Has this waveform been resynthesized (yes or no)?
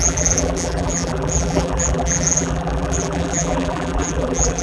yes